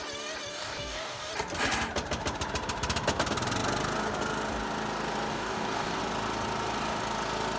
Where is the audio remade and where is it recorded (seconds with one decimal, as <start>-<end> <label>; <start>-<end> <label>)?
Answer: 0.0-0.5 recorded; 0.5-1.3 remade; 1.3-5.3 recorded; 5.3-6.0 remade; 6.0-7.6 recorded

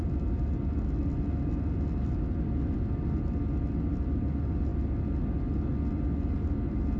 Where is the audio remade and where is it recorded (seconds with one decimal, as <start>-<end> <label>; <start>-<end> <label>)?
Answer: 0.0-7.0 recorded

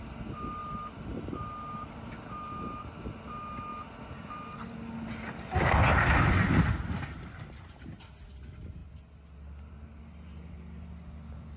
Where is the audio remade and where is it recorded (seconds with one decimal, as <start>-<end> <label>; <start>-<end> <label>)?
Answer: 0.0-11.6 recorded

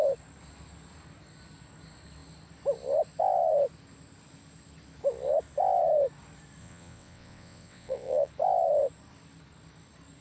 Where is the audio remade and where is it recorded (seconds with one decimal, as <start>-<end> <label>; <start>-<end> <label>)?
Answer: 0.0-6.6 recorded; 6.6-8.3 remade; 8.3-10.2 recorded